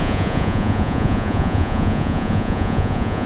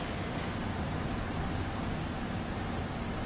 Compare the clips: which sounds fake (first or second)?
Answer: first